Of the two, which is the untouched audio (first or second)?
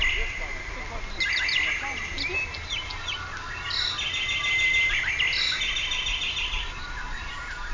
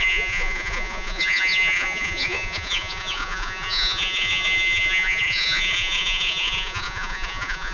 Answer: first